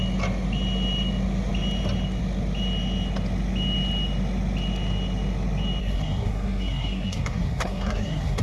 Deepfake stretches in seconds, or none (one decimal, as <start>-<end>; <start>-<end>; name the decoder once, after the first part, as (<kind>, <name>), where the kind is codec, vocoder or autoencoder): 5.8-8.4 (codec, SNAC)